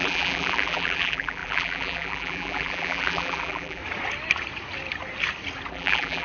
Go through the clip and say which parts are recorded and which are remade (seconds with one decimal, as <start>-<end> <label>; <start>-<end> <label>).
0.0-3.8 remade; 3.8-5.7 recorded; 5.7-6.2 remade